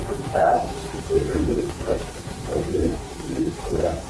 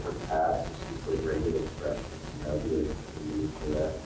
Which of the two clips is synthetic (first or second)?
first